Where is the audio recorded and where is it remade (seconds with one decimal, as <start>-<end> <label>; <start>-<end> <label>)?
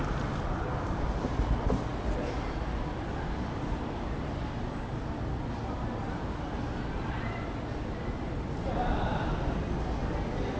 0.0-10.6 recorded